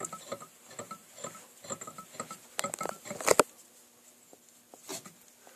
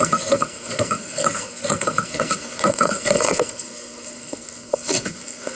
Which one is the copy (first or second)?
second